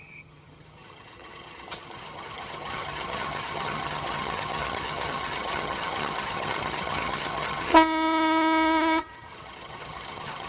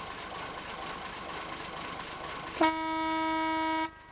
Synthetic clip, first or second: first